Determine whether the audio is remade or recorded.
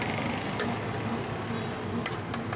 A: recorded